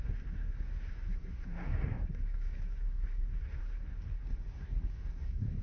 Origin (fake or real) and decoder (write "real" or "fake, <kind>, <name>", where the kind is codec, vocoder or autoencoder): fake, codec, SNAC